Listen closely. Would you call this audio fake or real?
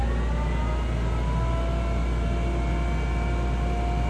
real